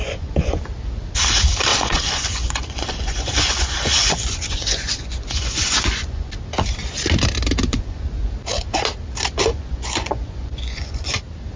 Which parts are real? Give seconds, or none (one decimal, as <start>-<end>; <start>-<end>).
0.6-1.7; 6.3-7.7; 8.3-9.5; 11.2-11.6